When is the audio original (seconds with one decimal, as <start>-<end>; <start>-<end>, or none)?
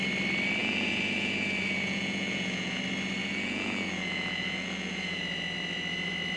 0.0-0.6; 2.8-3.2; 5.2-6.4